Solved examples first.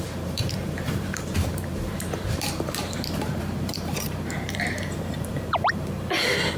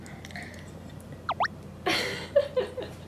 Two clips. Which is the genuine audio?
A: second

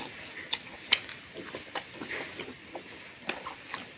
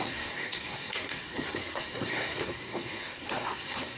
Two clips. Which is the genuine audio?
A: first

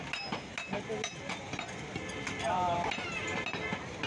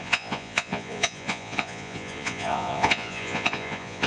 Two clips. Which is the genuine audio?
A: first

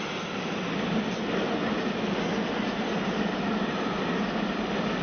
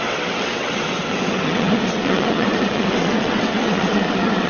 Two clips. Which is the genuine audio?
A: first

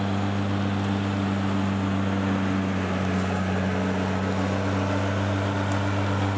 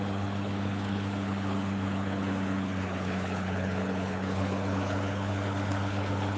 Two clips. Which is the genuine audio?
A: first